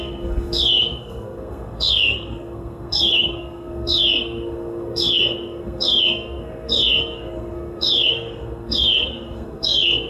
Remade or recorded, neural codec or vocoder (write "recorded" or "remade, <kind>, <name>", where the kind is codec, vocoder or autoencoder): remade, codec, SNAC